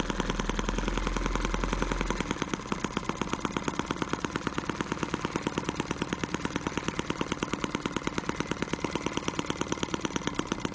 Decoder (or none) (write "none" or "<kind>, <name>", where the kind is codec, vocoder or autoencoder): none